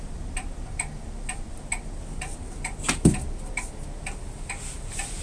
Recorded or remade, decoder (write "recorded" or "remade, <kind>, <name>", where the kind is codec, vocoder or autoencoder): recorded